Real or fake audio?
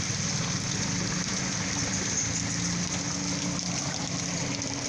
real